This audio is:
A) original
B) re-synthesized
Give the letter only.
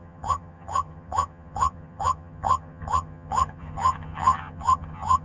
B